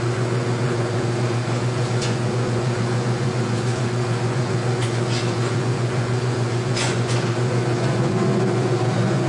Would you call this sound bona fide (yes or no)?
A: no